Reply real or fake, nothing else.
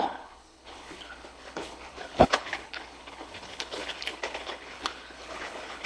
fake